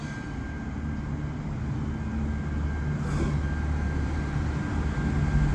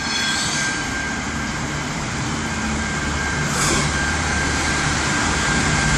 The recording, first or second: first